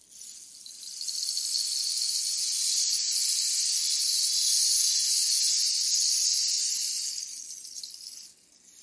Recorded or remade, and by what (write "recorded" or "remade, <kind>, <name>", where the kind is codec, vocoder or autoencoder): recorded